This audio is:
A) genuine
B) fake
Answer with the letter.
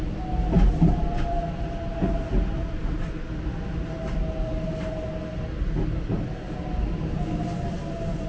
A